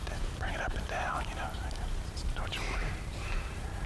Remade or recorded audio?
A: remade